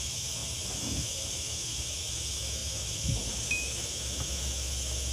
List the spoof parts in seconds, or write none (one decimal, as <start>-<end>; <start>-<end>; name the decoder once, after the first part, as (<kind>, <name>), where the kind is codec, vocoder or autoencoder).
0.0-5.1 (autoencoder, DAC-VAE)